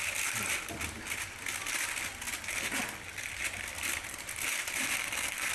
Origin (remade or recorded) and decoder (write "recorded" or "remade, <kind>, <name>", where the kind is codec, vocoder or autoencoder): recorded